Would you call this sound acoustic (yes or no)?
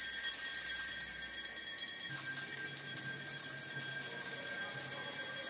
yes